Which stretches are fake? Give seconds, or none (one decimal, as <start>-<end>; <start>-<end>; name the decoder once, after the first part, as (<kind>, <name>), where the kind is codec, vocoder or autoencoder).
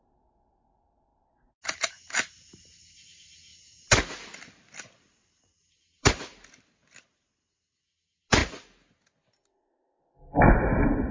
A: none